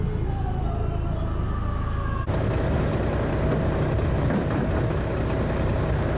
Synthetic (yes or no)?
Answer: no